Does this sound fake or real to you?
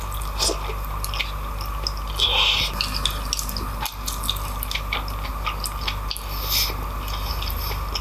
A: real